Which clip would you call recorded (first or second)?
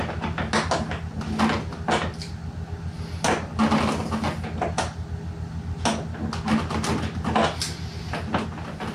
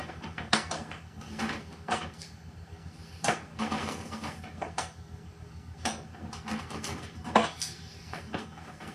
first